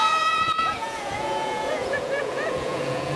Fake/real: fake